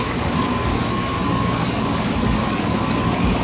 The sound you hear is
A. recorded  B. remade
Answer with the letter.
B